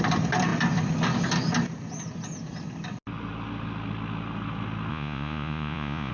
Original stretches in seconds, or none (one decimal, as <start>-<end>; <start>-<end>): 0.0-4.9